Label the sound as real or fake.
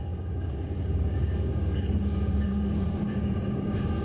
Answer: fake